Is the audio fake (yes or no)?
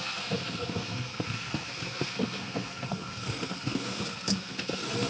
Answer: yes